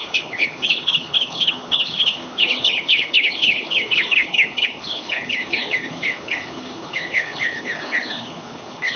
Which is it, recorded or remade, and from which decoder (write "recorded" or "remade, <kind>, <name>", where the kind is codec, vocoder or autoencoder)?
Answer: remade, codec, HILCodec